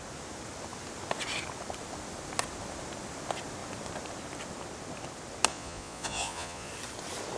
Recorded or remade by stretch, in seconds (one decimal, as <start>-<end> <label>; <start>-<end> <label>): 0.0-5.5 recorded; 5.5-6.7 remade; 6.7-7.4 recorded